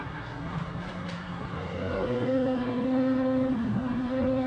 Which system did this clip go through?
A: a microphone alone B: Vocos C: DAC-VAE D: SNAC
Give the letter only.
D